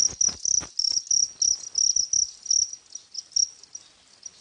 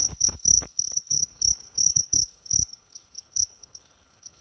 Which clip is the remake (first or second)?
second